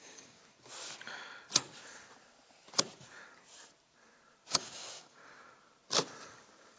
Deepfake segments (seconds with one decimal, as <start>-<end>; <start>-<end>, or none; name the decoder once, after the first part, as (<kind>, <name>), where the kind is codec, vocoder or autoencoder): 0.0-0.4 (codec, DAC); 4.5-5.2